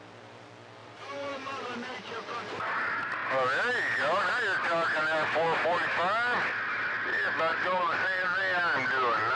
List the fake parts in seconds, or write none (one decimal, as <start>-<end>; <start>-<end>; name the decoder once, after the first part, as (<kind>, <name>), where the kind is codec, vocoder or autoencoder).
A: 0.8-2.4 (vocoder, BigVGAN v2); 7.5-8.4